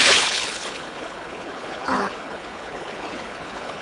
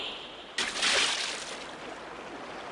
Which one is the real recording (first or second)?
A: second